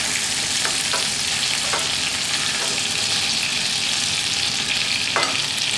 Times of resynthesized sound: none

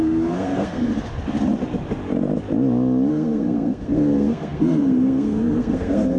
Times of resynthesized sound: 0.0-0.9; 3.1-6.2

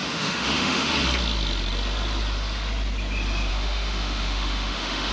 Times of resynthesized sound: 0.0-0.9; 3.5-5.1

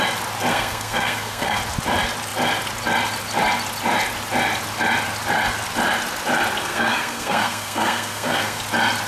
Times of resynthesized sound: 0.5-1.6; 6.6-8.6

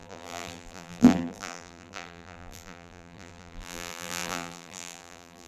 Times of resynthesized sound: 0.0-5.5

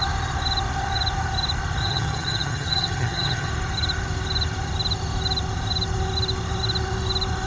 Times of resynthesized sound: 1.8-3.5

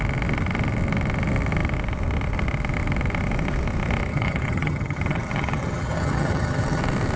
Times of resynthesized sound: 4.1-6.8